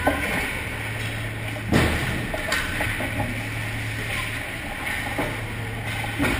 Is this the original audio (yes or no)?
yes